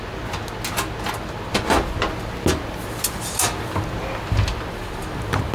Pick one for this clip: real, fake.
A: real